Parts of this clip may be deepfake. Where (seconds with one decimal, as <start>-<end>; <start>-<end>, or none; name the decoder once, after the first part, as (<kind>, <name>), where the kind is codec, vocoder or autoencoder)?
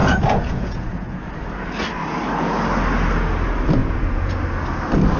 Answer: 0.0-1.3 (vocoder, Vocos); 3.8-4.3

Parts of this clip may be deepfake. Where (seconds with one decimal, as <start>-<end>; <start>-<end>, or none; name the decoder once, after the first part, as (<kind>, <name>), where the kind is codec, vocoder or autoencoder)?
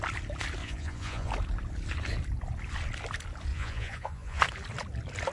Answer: 0.6-1.3 (vocoder, Vocos); 3.5-4.4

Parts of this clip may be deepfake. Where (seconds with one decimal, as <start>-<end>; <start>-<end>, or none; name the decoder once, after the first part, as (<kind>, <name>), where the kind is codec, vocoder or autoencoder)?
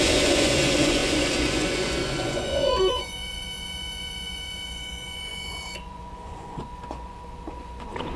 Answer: 0.0-8.2 (vocoder, Vocos)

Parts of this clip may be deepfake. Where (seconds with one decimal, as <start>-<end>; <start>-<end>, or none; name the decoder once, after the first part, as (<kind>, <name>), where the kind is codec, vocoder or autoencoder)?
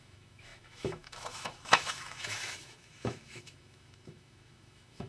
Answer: 0.0-5.1 (autoencoder, DAC-VAE)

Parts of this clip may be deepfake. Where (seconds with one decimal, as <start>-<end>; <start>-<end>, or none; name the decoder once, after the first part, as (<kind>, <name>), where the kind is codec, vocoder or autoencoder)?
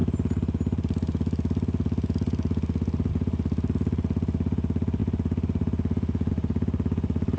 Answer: none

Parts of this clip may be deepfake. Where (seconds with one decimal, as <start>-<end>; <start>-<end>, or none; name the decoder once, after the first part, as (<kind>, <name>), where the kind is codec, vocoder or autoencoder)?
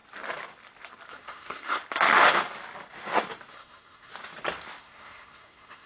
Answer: 1.1-1.8 (codec, SNAC); 3.5-4.1; 4.8-5.9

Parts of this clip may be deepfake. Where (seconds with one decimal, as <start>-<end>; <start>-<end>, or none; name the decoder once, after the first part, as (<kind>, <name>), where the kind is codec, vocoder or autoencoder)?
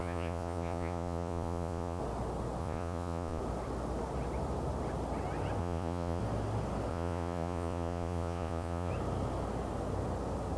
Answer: 0.0-2.0 (vocoder, Vocos); 2.6-3.4; 5.6-6.2; 6.9-8.9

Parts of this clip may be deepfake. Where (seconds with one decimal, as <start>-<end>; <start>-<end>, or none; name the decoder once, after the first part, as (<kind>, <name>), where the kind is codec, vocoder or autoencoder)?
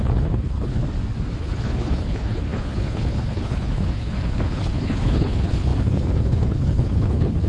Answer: 0.0-0.8 (codec, HILCodec); 1.4-7.5